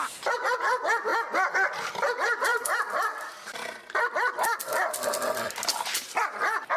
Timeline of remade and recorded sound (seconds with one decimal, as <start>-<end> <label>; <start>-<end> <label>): 0.0-2.5 recorded; 2.5-5.6 remade; 5.6-6.8 recorded

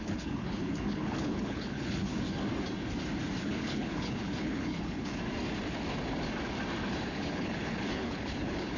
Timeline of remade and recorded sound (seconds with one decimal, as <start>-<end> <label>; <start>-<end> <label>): 0.0-2.1 remade; 2.1-3.4 recorded; 3.4-5.1 remade; 5.1-7.1 recorded; 7.1-8.8 remade

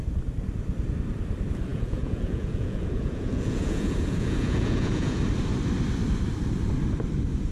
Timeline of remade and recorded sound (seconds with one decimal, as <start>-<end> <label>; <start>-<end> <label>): 0.0-1.7 recorded; 1.7-5.2 remade; 5.2-7.5 recorded

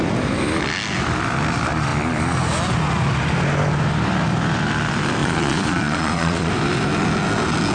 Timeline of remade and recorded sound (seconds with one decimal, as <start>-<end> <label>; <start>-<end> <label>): 0.0-5.2 recorded; 5.2-6.5 remade; 6.5-7.7 recorded

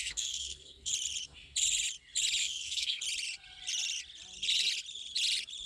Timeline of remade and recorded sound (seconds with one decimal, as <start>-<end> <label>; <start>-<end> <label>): 0.0-0.9 remade; 0.9-2.4 recorded; 2.4-3.0 remade; 3.0-5.7 recorded

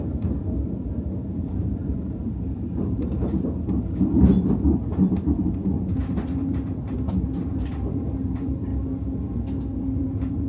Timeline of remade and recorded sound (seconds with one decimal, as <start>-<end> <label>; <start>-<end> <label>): 0.0-8.7 remade; 8.7-9.8 recorded; 9.8-10.5 remade

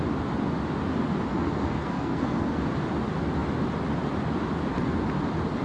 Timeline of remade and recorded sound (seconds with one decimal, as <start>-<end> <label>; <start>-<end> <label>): 0.0-1.3 recorded; 1.3-2.6 remade; 2.6-5.6 recorded

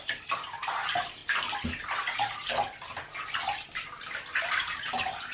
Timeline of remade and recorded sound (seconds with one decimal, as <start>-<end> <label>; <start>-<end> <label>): 0.0-1.2 remade; 1.2-4.4 recorded; 4.4-5.3 remade